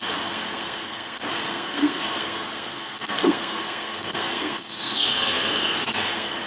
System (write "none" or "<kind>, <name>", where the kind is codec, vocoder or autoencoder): codec, SNAC